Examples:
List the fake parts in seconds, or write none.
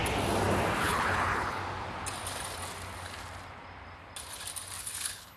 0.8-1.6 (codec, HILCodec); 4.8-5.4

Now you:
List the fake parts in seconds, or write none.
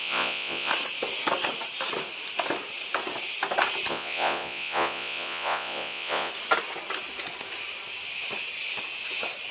0.0-0.7 (vocoder, Vocos); 3.9-6.3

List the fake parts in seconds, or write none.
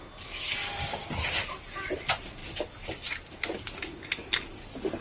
none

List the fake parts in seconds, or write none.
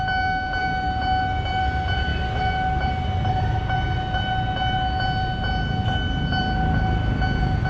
none